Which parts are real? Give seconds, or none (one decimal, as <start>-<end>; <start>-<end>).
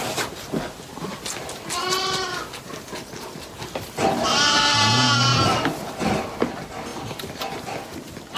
0.0-8.4